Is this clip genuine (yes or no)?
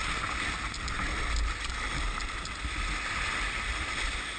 yes